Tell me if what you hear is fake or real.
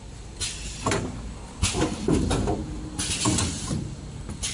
real